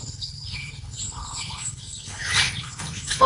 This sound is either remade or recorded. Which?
remade